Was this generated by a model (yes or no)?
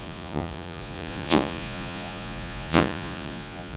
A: yes